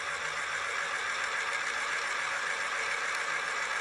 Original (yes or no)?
yes